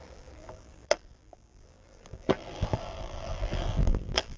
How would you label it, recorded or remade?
remade